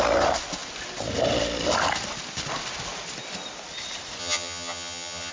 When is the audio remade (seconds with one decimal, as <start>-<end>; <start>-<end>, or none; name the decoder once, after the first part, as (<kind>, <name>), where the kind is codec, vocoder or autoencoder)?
4.2-5.3 (vocoder, HiFi-GAN)